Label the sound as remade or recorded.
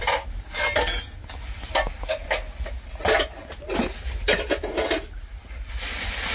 recorded